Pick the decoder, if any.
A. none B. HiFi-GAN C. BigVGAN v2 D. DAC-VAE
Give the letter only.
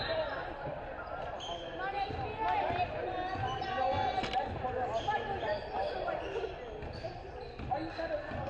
A